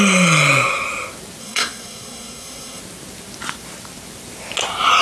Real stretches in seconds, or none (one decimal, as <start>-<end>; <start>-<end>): 0.0-1.4; 2.8-5.0